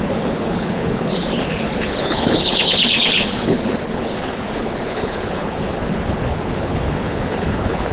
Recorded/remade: remade